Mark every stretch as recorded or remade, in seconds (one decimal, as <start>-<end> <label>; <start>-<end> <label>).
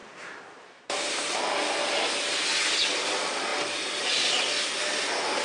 0.0-1.2 remade; 1.2-5.4 recorded